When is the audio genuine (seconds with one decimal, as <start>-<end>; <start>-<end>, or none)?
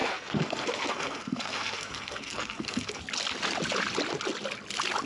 3.0-5.0